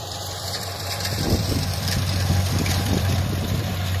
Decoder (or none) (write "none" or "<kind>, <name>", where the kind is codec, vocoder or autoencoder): vocoder, BigVGAN v2